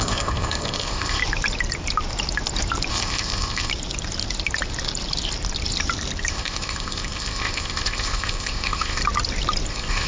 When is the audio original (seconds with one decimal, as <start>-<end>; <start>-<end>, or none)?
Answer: 1.2-2.9; 3.7-6.3; 9.0-9.7